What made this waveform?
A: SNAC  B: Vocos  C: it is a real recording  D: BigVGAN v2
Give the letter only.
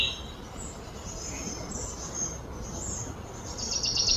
C